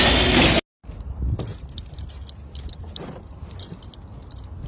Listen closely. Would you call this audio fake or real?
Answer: real